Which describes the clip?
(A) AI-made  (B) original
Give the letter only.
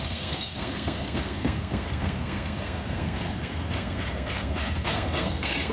A